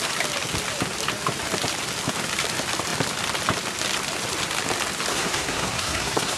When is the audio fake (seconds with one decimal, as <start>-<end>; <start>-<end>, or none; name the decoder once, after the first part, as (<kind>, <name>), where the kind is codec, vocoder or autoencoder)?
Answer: 5.1-6.4 (codec, SNAC)